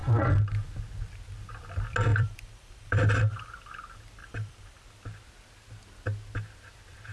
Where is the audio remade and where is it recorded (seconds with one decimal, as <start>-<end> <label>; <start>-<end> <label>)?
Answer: 0.0-2.1 recorded; 2.1-3.5 remade; 3.5-4.2 recorded; 4.2-4.8 remade; 4.8-7.1 recorded